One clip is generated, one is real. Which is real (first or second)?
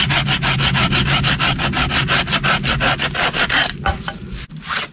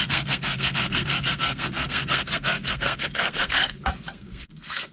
first